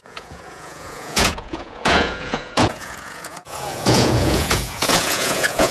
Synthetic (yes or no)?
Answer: yes